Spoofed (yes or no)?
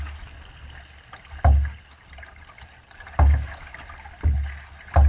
no